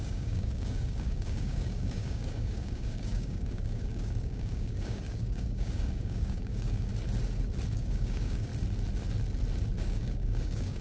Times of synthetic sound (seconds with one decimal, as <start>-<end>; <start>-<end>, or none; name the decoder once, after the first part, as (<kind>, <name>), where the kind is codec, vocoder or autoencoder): 0.0-6.9 (codec, DAC); 7.7-8.5; 9.8-10.8